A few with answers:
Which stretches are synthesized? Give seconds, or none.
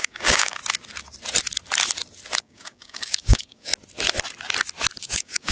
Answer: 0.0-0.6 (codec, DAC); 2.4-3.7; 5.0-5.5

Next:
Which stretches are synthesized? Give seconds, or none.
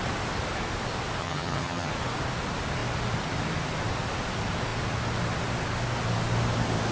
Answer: 1.2-1.9 (vocoder, HiFi-GAN)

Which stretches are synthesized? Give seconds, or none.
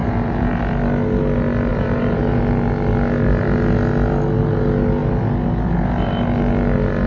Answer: 0.0-0.6 (vocoder, BigVGAN v2); 1.7-2.4